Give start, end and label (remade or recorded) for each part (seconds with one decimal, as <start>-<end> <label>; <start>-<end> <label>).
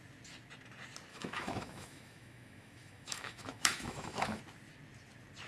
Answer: 0.0-1.1 recorded; 1.1-4.4 remade; 4.4-5.5 recorded